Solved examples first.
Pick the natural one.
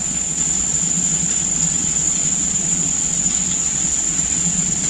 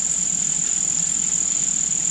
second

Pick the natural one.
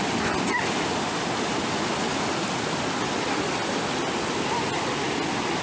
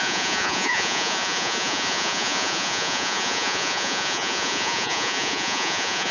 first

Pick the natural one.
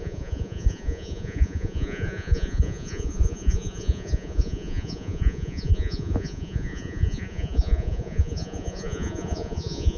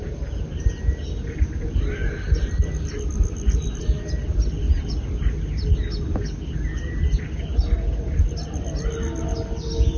second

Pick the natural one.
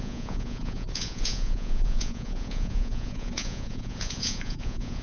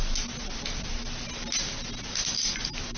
second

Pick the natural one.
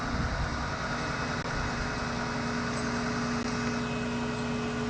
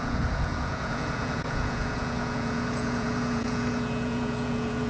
first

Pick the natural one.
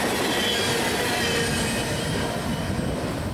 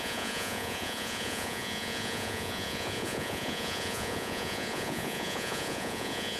first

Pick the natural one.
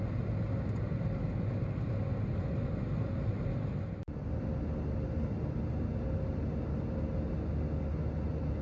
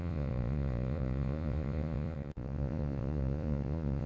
first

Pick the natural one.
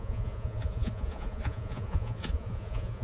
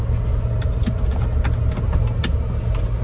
second